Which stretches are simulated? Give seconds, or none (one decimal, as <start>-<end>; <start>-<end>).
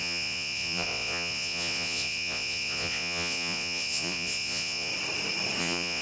0.0-4.9; 5.6-6.0